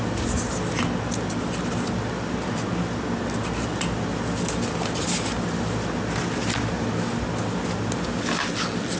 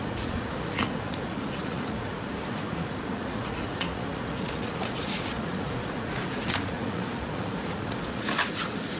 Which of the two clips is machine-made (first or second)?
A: second